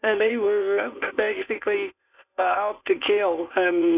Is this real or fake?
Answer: fake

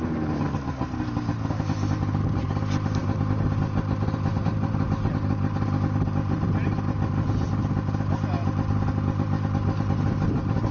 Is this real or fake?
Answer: real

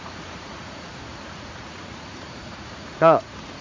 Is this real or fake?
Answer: fake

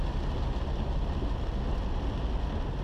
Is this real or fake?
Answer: real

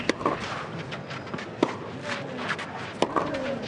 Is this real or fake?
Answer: real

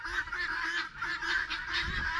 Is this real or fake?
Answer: real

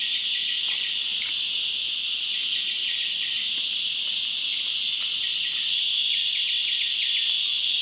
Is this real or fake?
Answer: real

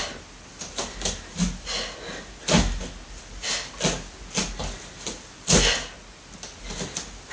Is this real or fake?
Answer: real